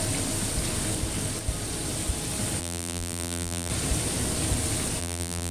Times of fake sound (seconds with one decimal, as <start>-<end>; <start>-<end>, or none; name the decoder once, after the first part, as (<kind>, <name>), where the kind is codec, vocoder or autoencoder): 2.6-3.7 (vocoder, BigVGAN v2); 5.0-5.5